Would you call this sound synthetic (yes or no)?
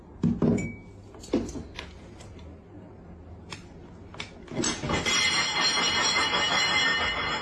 no